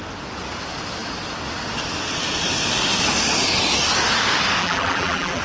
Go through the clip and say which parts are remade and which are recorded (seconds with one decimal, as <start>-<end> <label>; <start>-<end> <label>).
0.0-4.6 recorded; 4.6-5.4 remade